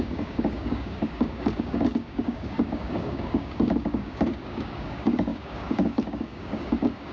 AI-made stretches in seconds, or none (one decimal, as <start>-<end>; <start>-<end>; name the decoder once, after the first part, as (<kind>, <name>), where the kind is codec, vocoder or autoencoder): 0.0-7.1 (codec, DAC)